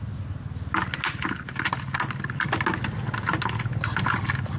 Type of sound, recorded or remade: recorded